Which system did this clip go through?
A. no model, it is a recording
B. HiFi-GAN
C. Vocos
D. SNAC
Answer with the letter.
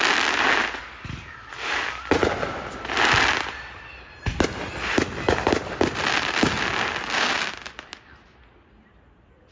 A